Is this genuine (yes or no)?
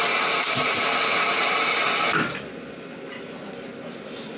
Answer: yes